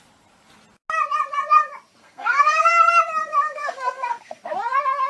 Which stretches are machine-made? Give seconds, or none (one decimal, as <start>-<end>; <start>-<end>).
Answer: 2.0-2.7; 3.3-4.4